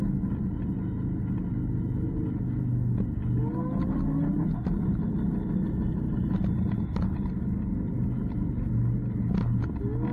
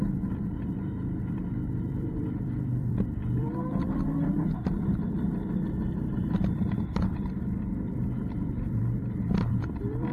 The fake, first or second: second